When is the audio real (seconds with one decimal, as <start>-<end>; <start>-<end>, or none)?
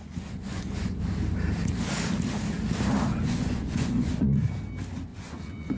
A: 1.0-3.1; 4.5-5.1